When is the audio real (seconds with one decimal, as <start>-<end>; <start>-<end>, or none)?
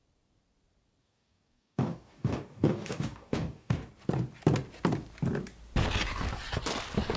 0.0-1.0; 3.9-7.2